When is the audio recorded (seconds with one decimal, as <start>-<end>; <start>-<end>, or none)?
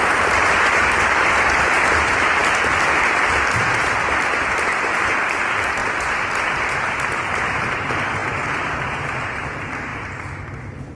2.4-3.7; 5.8-6.8; 9.9-10.9